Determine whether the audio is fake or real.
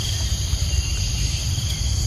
fake